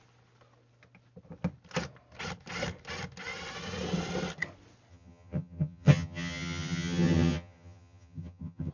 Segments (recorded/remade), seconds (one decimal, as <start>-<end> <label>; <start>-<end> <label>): 0.0-4.9 recorded; 4.9-8.7 remade

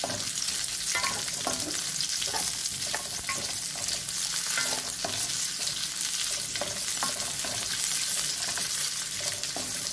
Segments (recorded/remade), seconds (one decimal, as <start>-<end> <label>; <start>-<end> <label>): 0.0-9.9 recorded